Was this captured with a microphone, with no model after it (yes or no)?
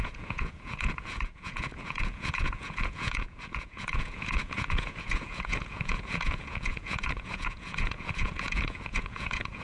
no